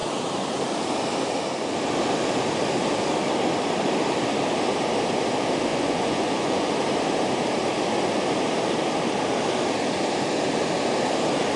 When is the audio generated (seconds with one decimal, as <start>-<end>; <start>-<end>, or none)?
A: 5.7-6.7